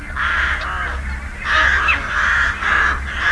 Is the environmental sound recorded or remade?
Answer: recorded